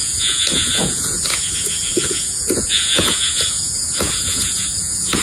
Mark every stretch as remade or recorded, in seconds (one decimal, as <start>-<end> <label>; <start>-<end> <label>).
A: 0.0-5.2 remade